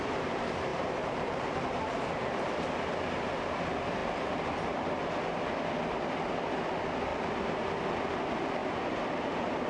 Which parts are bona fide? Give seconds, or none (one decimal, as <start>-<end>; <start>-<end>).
0.0-0.7; 2.0-8.6